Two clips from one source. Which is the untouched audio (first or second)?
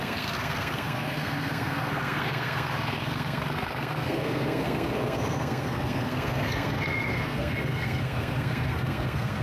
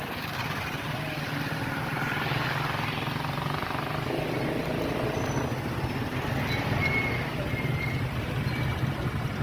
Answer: second